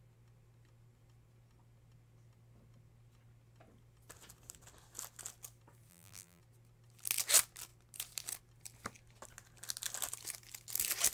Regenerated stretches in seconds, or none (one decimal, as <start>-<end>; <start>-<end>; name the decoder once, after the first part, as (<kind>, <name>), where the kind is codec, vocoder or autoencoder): 5.9-6.4 (vocoder, BigVGAN v2)

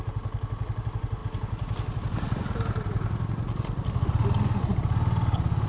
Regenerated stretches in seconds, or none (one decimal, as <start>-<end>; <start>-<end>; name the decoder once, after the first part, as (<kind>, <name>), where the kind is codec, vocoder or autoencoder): none

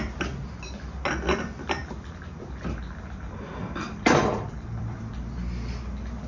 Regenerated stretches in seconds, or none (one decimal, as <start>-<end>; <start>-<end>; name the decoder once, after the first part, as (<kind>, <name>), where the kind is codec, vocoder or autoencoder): 1.8-2.8 (vocoder, BigVGAN v2); 4.2-5.1

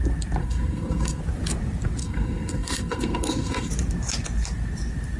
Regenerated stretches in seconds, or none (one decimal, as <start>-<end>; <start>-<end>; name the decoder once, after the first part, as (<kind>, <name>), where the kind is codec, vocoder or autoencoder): 0.4-1.2 (codec, SNAC); 2.0-3.7

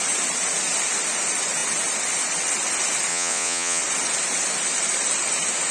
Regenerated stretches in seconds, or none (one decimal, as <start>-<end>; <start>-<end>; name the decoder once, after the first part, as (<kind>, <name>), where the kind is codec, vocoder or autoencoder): 3.1-3.8 (vocoder, Vocos)